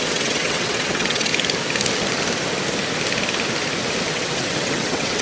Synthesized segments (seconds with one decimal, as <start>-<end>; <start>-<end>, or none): 0.0-1.3; 4.1-5.2